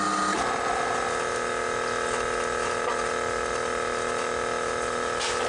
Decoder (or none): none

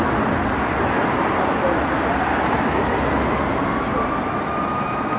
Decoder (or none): none